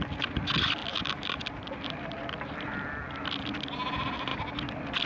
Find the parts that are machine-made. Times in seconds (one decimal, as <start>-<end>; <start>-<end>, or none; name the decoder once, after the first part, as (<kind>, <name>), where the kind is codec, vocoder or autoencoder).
none